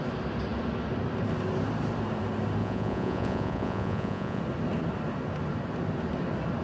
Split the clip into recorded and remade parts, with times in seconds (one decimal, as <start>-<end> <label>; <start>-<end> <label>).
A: 0.0-2.6 recorded; 2.6-4.4 remade; 4.4-6.6 recorded